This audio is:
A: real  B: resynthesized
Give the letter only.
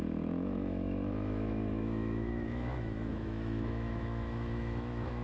B